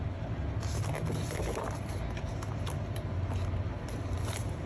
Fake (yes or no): no